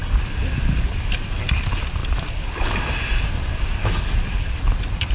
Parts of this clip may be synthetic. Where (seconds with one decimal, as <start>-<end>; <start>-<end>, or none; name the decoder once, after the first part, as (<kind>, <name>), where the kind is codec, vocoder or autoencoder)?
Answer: none